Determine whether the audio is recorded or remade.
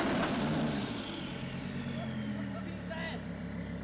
recorded